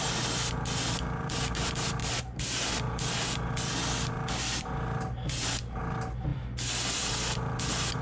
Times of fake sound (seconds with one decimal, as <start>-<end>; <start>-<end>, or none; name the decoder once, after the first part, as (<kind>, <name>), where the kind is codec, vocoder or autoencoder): none